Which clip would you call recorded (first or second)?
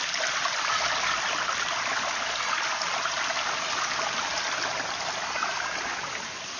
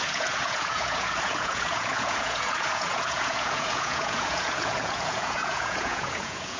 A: first